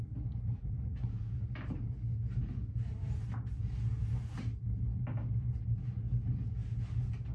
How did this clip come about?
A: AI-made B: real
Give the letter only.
B